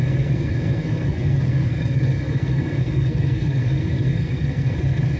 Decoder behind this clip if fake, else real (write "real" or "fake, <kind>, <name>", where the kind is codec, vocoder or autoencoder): fake, codec, SNAC